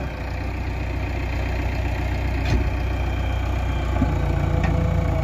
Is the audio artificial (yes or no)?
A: no